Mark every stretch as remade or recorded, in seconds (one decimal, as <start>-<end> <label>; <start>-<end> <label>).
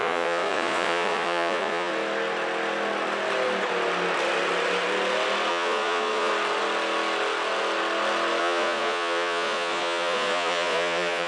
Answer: 0.0-1.9 remade; 1.9-5.5 recorded; 5.5-6.3 remade; 6.3-8.4 recorded; 8.4-11.3 remade